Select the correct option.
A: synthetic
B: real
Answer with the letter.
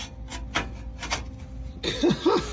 B